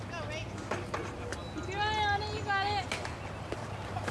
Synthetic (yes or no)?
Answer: no